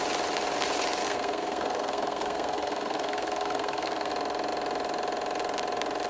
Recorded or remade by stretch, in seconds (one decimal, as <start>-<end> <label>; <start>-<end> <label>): 0.0-1.0 recorded; 1.0-4.1 remade; 4.1-6.1 recorded